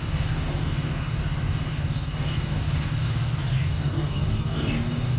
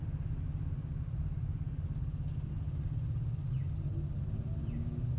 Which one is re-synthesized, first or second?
first